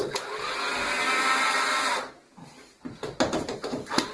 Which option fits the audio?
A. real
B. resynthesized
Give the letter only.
A